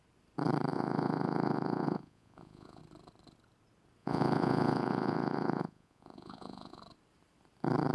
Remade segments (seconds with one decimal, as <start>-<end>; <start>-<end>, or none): 0.7-2.8; 4.0-6.8